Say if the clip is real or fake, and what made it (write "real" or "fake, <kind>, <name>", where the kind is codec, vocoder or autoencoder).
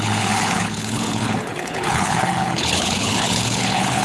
fake, codec, HILCodec